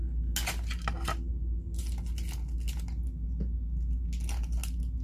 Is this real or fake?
real